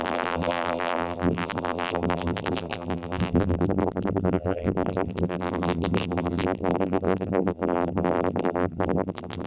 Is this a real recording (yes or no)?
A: no